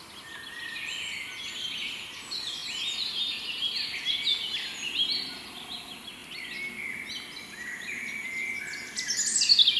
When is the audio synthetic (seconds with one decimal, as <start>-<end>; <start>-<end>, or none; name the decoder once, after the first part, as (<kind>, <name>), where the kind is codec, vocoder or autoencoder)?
none